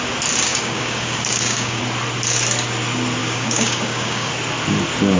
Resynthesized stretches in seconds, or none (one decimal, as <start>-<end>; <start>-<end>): 0.5-1.8; 3.2-4.3